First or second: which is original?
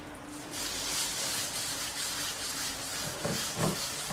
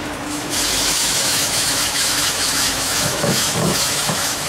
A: first